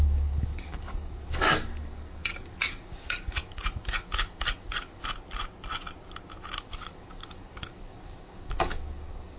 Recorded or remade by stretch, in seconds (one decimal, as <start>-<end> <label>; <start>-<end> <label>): 0.0-5.0 remade; 5.0-6.6 recorded; 6.6-9.4 remade